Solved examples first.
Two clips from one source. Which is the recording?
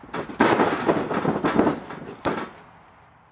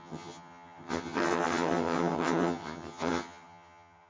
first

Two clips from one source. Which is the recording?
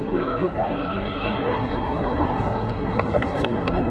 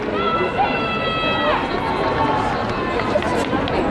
second